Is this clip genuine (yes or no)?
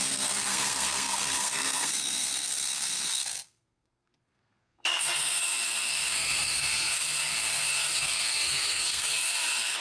no